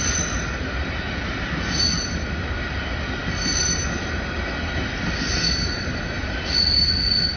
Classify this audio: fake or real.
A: real